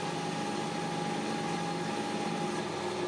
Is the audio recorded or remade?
recorded